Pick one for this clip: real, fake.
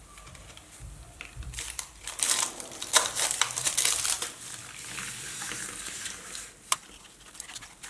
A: fake